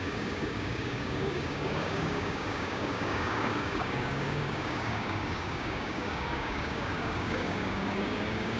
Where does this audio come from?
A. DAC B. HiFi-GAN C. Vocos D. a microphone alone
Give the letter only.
A